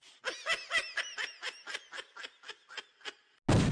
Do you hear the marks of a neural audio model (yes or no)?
no